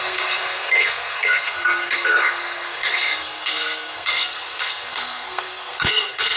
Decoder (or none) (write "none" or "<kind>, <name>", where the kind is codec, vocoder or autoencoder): codec, SNAC